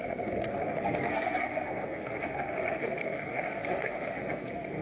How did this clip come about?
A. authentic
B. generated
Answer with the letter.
B